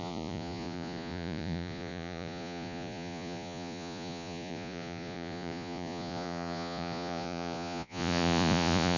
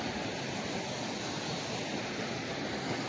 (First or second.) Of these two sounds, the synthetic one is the first